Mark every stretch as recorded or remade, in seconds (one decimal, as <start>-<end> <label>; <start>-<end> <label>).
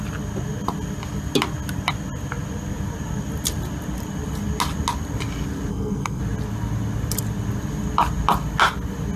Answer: 0.0-5.7 recorded; 5.7-6.2 remade; 6.2-9.2 recorded